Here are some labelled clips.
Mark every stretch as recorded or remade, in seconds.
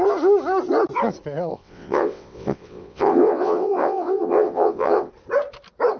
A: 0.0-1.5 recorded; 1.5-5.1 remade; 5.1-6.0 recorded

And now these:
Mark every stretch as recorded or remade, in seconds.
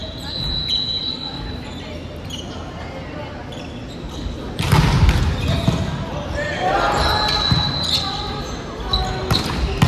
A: 0.0-1.0 remade; 1.0-9.9 recorded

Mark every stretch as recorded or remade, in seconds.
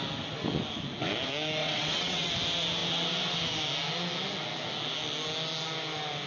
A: 0.0-1.6 recorded; 1.6-2.3 remade; 2.3-6.3 recorded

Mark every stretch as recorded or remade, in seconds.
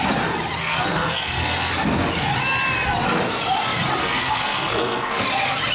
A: 0.0-0.6 recorded; 0.6-1.7 remade; 1.7-4.0 recorded; 4.0-5.2 remade; 5.2-5.7 recorded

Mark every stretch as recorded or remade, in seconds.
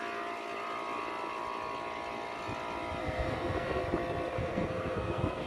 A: 0.0-3.0 recorded; 3.0-3.8 remade; 3.8-4.4 recorded; 4.4-5.5 remade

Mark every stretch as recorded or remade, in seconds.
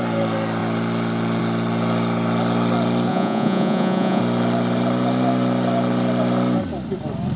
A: 0.0-3.1 recorded; 3.1-4.2 remade; 4.2-7.4 recorded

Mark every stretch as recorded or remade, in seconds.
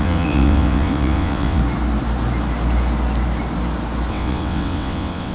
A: 0.0-1.6 remade; 1.6-4.1 recorded; 4.1-5.3 remade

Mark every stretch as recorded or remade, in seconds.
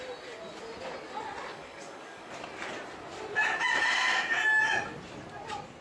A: 0.0-1.5 recorded; 1.5-2.3 remade; 2.3-5.8 recorded